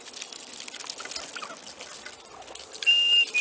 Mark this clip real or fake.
real